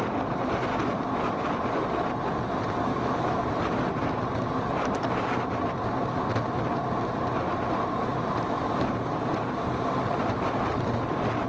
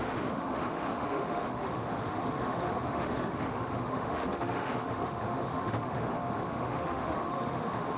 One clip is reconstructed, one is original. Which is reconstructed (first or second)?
second